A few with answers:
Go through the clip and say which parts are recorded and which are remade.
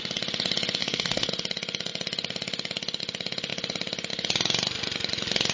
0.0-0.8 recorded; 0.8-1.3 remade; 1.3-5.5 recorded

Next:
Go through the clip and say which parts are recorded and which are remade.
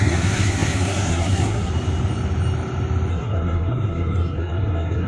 0.0-1.7 remade; 1.7-3.1 recorded; 3.1-5.1 remade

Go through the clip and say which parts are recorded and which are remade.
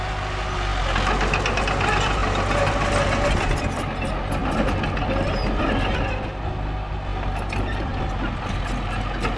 0.0-9.4 recorded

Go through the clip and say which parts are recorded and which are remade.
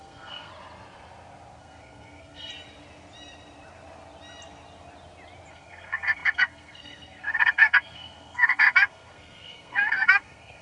0.0-0.5 remade; 0.5-1.6 recorded; 1.6-2.5 remade; 2.5-5.5 recorded; 5.5-10.6 remade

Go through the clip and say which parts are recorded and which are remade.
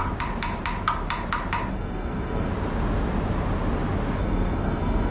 0.0-1.7 recorded; 1.7-2.5 remade; 2.5-4.2 recorded; 4.2-5.1 remade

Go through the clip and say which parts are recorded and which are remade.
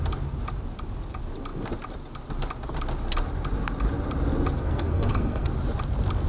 0.0-4.6 recorded; 4.6-5.5 remade; 5.5-6.3 recorded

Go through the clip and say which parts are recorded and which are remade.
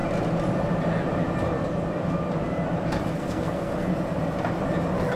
0.0-3.1 recorded; 3.1-3.9 remade; 3.9-5.2 recorded